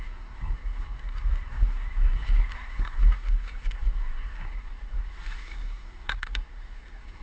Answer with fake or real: fake